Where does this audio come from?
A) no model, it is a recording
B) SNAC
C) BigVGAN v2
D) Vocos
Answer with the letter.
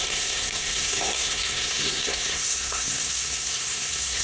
B